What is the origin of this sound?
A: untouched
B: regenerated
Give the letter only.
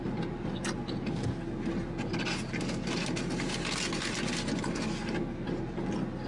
A